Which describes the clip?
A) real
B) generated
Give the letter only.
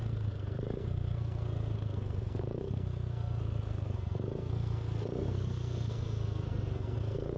B